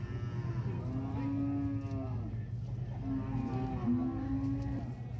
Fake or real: real